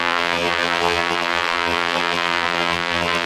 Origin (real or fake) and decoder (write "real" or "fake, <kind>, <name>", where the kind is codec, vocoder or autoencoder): fake, vocoder, BigVGAN v2